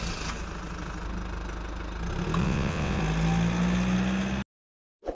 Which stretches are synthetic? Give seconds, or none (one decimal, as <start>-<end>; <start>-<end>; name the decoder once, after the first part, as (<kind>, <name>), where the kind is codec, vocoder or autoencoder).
2.4-3.0 (vocoder, WaveNeXt)